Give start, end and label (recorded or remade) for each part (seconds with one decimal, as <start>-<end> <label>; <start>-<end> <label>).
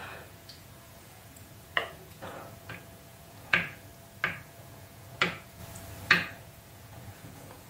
0.0-3.9 remade; 3.9-4.4 recorded; 4.4-5.6 remade; 5.6-6.1 recorded; 6.1-7.7 remade